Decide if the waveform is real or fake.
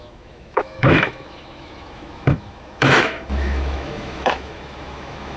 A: fake